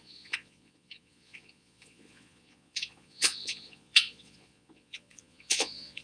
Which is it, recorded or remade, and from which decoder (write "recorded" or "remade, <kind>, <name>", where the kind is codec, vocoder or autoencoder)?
remade, vocoder, Vocos